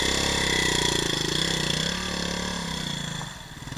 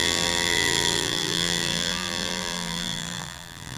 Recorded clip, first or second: first